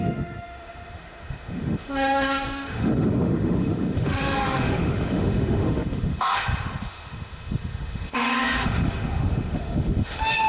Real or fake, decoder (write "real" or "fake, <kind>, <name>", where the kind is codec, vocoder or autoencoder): fake, autoencoder, DAC-VAE